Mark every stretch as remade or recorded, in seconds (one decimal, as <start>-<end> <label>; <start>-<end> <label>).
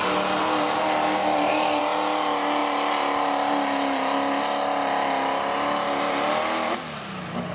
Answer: 0.0-7.5 recorded